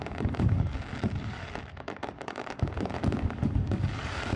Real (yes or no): no